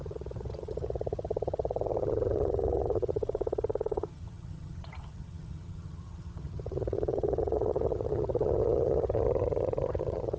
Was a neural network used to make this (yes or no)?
yes